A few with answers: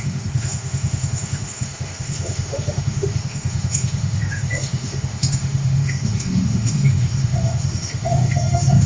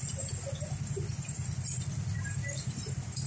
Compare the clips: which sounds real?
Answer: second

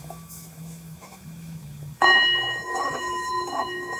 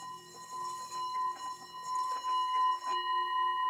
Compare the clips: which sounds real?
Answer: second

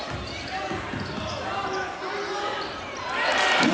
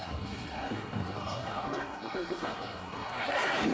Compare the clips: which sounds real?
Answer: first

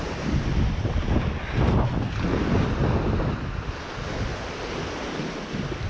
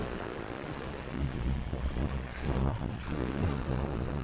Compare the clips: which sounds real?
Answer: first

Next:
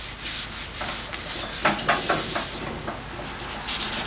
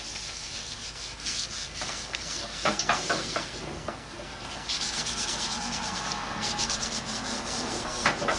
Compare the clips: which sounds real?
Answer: first